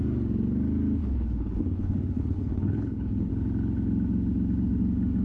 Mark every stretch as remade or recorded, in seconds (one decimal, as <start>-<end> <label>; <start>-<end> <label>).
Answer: 0.0-1.0 recorded; 1.0-3.3 remade; 3.3-5.2 recorded